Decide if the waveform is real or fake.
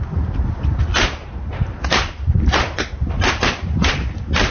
real